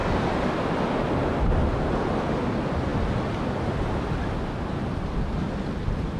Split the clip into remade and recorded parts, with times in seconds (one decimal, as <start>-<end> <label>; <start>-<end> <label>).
0.0-6.2 recorded